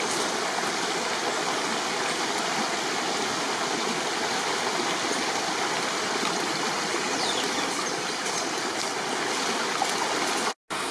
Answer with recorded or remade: recorded